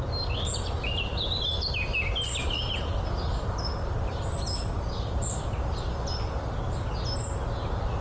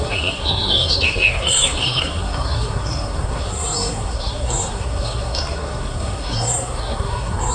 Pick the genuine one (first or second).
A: first